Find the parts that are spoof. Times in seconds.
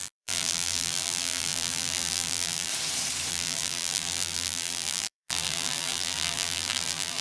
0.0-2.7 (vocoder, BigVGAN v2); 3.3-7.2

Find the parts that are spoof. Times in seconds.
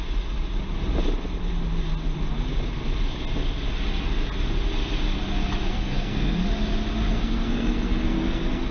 5.7-6.4 (codec, SNAC); 7.1-8.7